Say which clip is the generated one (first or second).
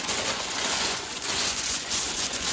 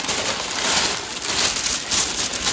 first